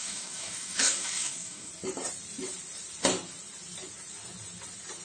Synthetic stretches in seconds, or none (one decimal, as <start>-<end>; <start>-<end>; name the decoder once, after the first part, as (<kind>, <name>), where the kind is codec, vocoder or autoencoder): 0.0-1.7 (codec, DAC)